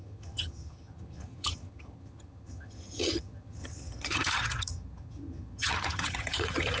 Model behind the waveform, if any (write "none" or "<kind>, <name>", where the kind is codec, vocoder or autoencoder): vocoder, HiFi-GAN